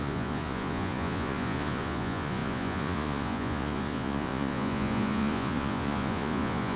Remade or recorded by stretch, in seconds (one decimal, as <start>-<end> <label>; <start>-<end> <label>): 0.0-6.8 remade